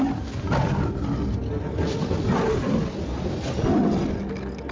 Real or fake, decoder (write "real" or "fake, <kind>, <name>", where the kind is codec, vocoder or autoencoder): real